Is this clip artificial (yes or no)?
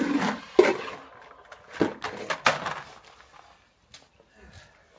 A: no